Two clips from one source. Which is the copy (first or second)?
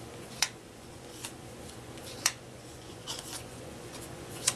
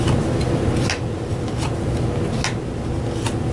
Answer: first